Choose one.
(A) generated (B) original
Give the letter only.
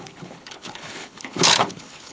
A